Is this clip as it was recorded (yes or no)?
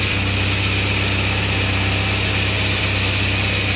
yes